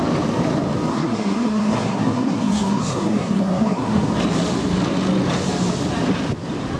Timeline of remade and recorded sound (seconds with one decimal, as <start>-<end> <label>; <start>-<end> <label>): 0.0-0.9 recorded; 0.9-4.1 remade; 4.1-6.8 recorded